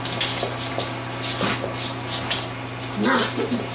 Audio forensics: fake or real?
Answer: real